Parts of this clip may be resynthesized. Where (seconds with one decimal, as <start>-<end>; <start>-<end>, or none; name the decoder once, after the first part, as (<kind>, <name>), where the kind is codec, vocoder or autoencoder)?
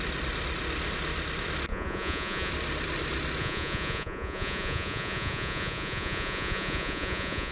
1.7-2.5 (vocoder, Vocos); 3.4-7.5